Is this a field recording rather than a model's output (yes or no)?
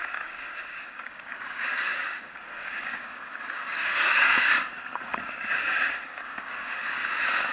no